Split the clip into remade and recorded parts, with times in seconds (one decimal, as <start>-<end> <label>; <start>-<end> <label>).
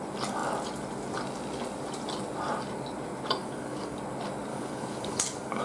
0.0-3.4 recorded; 3.4-4.0 remade; 4.0-4.5 recorded; 4.5-5.6 remade